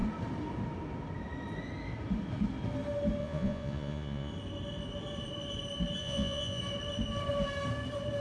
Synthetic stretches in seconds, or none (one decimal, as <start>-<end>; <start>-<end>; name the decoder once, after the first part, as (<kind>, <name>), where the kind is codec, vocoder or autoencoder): 3.2-4.3 (vocoder, Vocos); 6.0-6.6